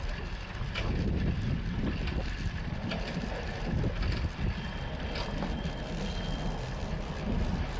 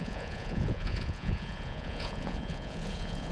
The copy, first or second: second